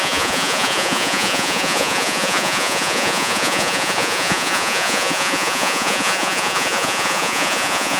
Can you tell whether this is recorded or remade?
remade